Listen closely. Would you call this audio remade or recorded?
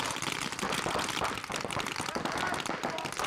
recorded